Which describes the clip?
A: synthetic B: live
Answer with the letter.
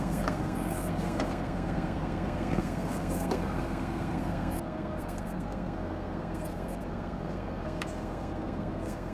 A